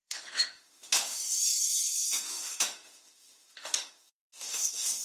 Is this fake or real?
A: fake